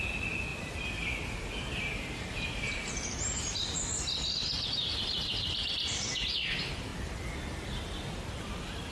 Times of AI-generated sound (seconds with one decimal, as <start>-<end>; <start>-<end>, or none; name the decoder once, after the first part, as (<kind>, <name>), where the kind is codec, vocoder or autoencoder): 0.5-3.8 (vocoder, BigVGAN v2); 4.4-5.7